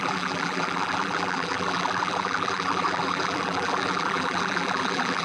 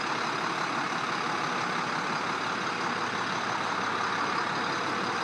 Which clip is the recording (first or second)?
second